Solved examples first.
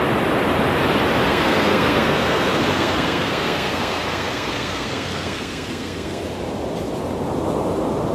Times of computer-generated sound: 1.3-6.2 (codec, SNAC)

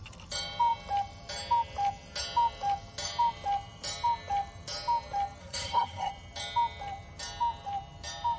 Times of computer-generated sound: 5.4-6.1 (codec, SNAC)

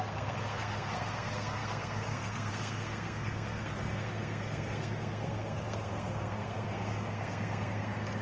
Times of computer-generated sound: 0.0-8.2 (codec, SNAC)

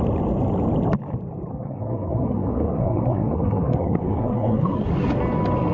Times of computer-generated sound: 1.5-4.9 (codec, SNAC)